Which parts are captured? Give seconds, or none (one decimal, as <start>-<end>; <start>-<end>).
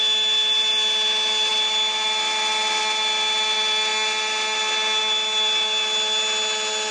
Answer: 0.0-6.9